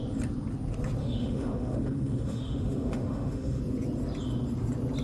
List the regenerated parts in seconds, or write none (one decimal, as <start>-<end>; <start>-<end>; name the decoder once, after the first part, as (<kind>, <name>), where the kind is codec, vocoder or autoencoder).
1.0-3.6 (autoencoder, DAC-VAE)

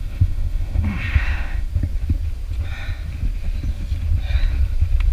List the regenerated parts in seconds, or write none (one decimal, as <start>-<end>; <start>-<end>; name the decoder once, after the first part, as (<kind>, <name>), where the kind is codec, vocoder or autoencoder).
0.0-1.7 (autoencoder, DAC-VAE)